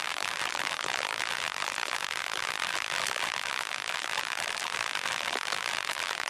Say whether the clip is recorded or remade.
remade